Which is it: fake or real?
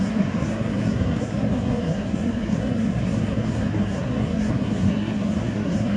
fake